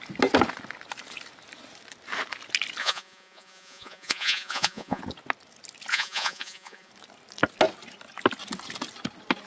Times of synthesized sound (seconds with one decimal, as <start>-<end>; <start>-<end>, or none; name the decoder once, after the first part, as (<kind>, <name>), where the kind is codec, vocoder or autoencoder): 2.8-5.0 (vocoder, Vocos); 5.9-6.9